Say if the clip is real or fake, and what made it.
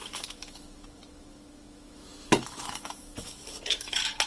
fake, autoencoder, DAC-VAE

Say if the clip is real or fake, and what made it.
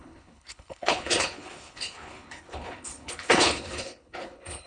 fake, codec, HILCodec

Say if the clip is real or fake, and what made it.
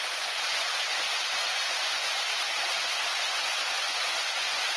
fake, vocoder, Vocos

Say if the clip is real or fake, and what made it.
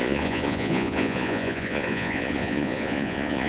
fake, vocoder, Vocos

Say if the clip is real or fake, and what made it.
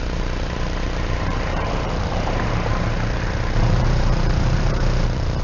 fake, vocoder, BigVGAN v2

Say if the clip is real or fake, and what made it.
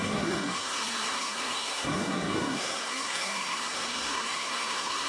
fake, codec, SNAC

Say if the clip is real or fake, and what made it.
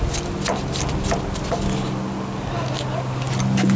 real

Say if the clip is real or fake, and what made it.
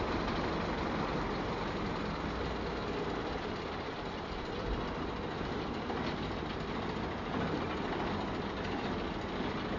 real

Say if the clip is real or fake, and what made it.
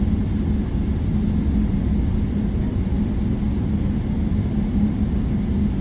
real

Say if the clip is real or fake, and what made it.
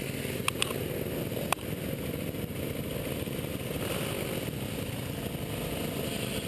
real